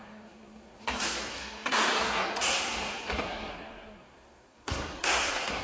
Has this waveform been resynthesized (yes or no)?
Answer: yes